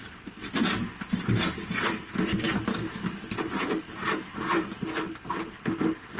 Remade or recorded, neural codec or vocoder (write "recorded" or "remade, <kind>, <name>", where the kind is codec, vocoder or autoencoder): recorded